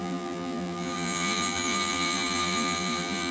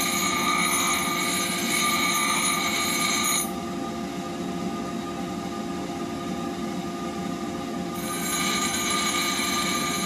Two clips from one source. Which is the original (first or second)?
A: second